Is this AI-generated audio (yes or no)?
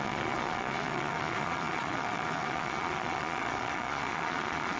yes